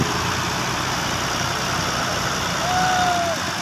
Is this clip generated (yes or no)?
no